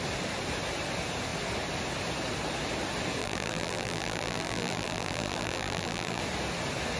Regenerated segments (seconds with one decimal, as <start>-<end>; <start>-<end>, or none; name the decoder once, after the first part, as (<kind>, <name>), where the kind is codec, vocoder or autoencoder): 3.2-6.2 (vocoder, BigVGAN v2)